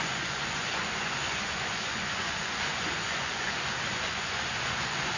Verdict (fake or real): fake